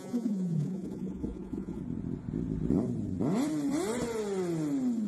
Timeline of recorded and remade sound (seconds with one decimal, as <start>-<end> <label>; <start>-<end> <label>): 0.0-1.8 remade; 1.8-5.1 recorded